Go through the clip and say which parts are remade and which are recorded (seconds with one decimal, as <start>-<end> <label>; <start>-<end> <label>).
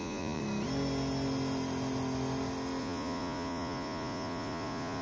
0.0-0.4 remade; 0.4-2.8 recorded; 2.8-5.0 remade